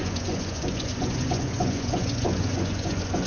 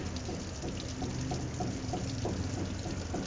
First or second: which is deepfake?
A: first